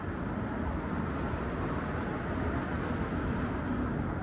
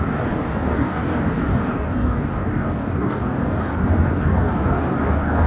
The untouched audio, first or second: first